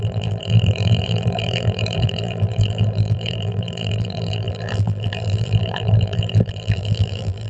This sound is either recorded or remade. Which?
remade